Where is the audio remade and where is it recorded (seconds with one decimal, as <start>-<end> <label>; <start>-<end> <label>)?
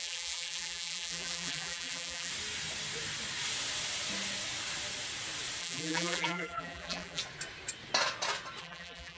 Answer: 0.0-2.3 remade; 2.3-5.6 recorded; 5.6-7.2 remade; 7.2-8.6 recorded; 8.6-9.2 remade